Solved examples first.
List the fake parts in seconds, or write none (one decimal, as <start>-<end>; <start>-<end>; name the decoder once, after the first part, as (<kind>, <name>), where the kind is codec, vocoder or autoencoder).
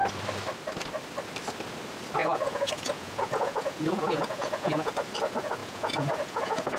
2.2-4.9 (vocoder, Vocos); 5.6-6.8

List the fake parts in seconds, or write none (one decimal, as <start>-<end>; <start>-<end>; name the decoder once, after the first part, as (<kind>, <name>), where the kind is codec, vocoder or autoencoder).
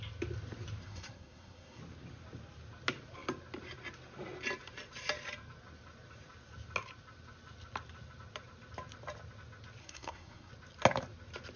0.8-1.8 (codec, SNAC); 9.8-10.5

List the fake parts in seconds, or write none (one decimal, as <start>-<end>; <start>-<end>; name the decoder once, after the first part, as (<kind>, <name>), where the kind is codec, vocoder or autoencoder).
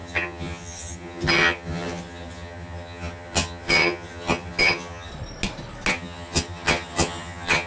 0.0-5.1 (vocoder, HiFi-GAN); 5.9-7.7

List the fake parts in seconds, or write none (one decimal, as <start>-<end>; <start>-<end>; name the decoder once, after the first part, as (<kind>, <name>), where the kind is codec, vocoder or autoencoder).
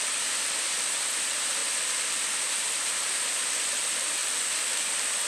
0.0-1.6 (vocoder, BigVGAN v2); 2.3-4.2